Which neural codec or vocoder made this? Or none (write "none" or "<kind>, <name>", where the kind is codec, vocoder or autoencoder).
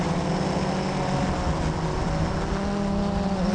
none